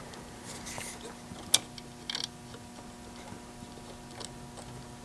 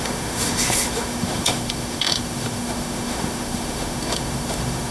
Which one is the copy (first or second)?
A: second